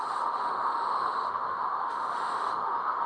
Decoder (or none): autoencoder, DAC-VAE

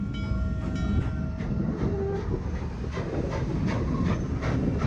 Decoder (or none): none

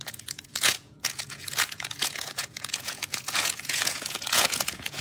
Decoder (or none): vocoder, Vocos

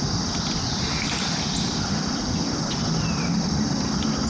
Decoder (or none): none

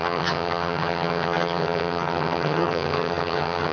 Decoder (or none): vocoder, HiFi-GAN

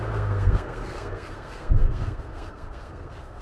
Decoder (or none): codec, SNAC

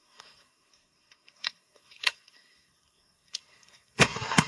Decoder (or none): codec, SNAC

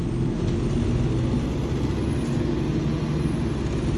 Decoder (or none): none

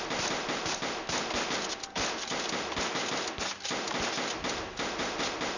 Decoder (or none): none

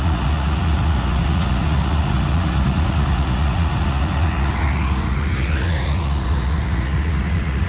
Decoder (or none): vocoder, Vocos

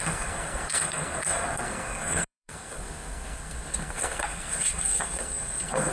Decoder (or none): codec, SNAC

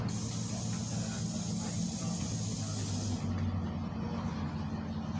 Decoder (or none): none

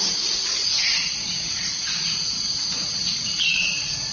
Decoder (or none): vocoder, Vocos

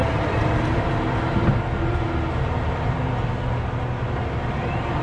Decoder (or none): none